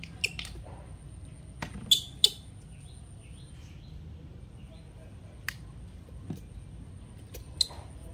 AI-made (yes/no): no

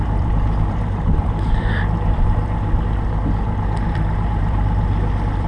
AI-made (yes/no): yes